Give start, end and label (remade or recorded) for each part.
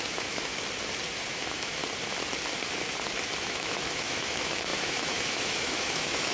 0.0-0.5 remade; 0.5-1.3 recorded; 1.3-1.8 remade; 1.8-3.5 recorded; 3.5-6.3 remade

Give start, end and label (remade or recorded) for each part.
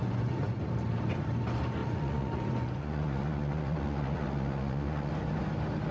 0.0-0.6 remade; 0.6-1.8 recorded; 1.8-5.1 remade; 5.1-5.9 recorded